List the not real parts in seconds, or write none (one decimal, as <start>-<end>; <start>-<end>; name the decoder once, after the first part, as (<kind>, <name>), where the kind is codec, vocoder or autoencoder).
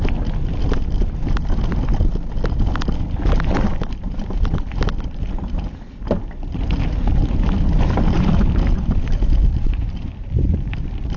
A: 9.4-10.7 (vocoder, BigVGAN v2)